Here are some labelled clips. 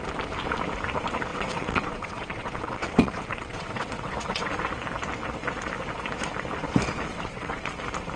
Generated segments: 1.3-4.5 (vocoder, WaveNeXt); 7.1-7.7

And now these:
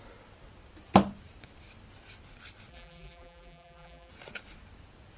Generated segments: 2.7-4.1 (vocoder, BigVGAN v2)

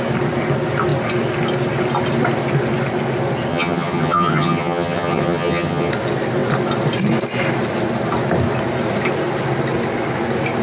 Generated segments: 3.5-5.9 (vocoder, HiFi-GAN)

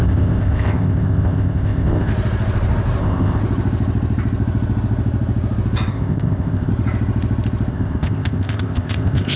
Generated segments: 0.0-2.1 (codec, ZipCodec); 3.0-3.4; 5.9-6.7; 7.7-9.4

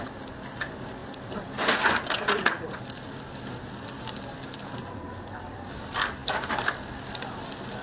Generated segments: 6.2-6.9 (vocoder, BigVGAN v2)

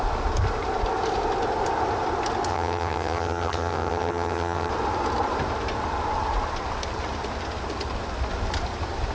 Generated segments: 2.5-4.7 (vocoder, HiFi-GAN)

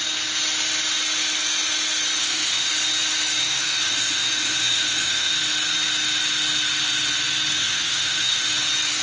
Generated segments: 2.2-2.7 (autoencoder, DAC-VAE); 3.4-5.3; 7.6-8.5